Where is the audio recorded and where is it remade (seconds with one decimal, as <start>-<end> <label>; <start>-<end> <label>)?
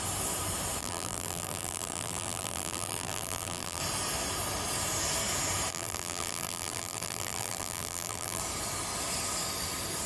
0.0-0.8 recorded; 0.8-3.8 remade; 3.8-5.7 recorded; 5.7-8.4 remade; 8.4-10.1 recorded